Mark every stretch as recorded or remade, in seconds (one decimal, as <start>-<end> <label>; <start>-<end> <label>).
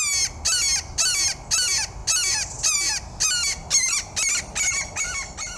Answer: 0.0-5.6 recorded